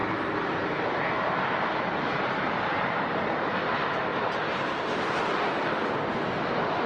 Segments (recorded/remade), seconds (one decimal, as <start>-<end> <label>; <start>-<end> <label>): 0.0-3.4 remade; 3.4-4.1 recorded; 4.1-5.9 remade; 5.9-6.9 recorded